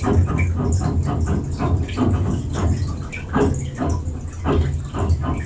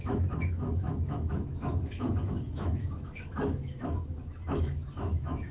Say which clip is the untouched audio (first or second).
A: first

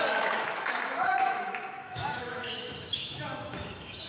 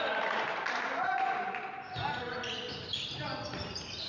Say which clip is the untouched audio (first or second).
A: second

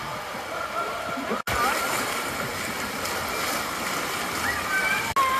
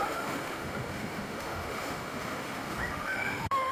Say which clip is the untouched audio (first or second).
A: first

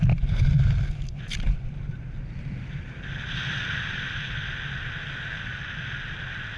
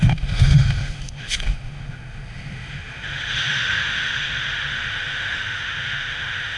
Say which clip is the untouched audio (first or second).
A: first